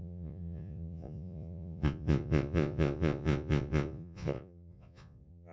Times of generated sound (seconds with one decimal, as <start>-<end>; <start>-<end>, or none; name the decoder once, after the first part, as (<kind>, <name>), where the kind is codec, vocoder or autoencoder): 0.0-5.5 (vocoder, Vocos)